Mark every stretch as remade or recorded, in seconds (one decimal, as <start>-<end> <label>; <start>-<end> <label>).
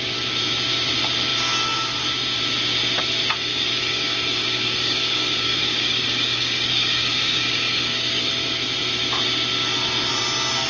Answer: 0.0-3.5 recorded; 3.5-8.3 remade; 8.3-10.7 recorded